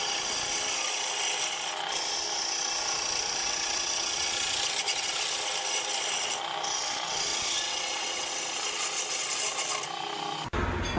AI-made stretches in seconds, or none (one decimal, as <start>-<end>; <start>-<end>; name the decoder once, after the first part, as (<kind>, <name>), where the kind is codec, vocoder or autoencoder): 3.4-4.6 (vocoder, WaveNeXt); 7.3-8.3